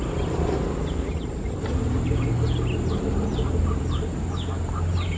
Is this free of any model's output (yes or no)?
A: yes